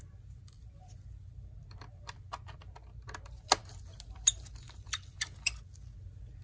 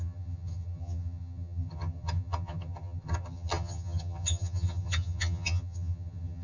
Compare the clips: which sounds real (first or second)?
first